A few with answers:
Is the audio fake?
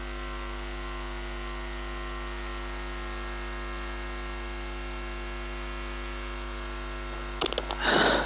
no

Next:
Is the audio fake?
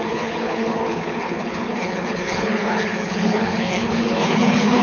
yes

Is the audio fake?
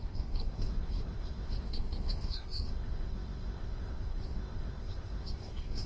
yes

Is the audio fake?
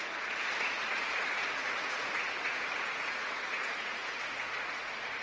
yes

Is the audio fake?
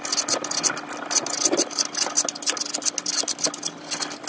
no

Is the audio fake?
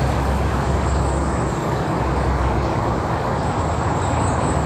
yes